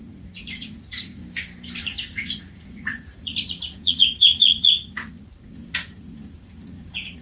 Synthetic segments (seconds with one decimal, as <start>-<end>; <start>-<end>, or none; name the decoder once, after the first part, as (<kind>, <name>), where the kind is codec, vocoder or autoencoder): 0.0-1.2 (vocoder, Vocos); 1.8-7.2